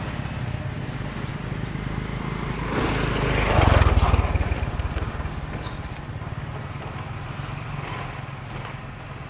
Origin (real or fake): real